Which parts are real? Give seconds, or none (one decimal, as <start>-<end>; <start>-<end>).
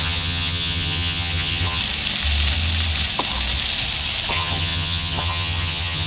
1.8-4.3